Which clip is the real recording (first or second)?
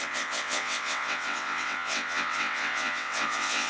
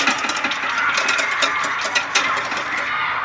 second